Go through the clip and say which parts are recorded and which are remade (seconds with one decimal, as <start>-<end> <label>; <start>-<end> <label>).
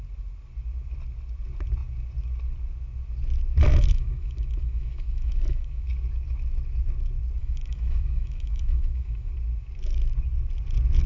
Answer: 0.0-3.7 recorded; 3.7-5.9 remade; 5.9-7.4 recorded; 7.4-9.3 remade; 9.3-11.1 recorded